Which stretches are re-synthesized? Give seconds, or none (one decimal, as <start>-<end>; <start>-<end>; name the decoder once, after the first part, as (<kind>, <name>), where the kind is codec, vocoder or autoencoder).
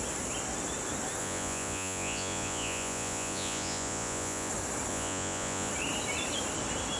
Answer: 1.2-4.5 (vocoder, Vocos); 4.9-5.7